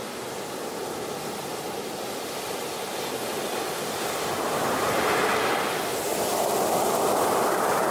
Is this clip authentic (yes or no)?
yes